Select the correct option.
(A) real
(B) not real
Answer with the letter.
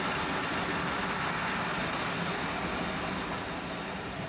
A